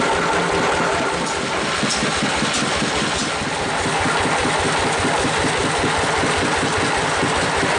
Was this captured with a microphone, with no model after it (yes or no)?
yes